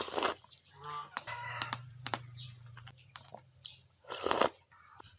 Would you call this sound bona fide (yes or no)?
no